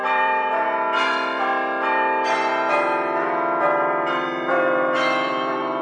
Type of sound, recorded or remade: remade